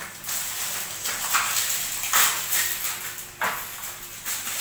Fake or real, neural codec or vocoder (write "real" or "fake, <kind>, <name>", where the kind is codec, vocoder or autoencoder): real